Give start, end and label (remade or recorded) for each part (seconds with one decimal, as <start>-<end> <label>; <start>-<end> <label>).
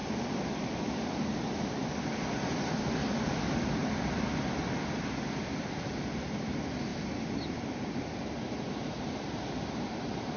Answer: 0.0-10.4 recorded